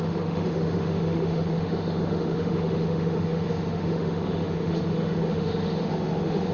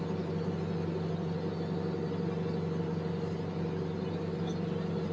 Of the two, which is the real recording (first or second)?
second